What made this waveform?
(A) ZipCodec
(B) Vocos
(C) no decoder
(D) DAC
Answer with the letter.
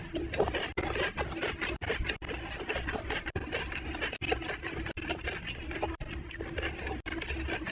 C